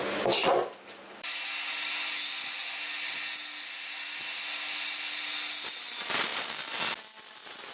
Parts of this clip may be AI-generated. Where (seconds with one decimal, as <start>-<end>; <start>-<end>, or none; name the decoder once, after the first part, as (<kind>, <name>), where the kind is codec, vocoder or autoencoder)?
none